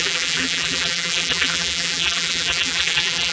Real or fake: fake